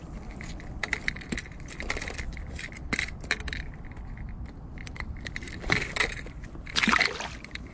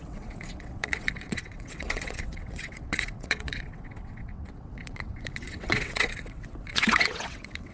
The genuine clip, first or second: first